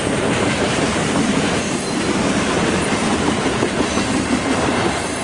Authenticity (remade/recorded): remade